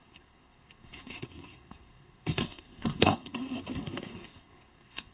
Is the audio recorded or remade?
remade